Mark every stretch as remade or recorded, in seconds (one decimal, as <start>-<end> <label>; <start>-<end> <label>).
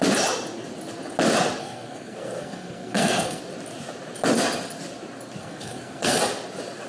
0.0-1.6 recorded; 1.6-3.4 remade; 3.4-5.4 recorded; 5.4-6.2 remade; 6.2-6.9 recorded